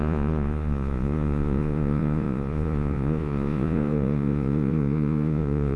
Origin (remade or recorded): remade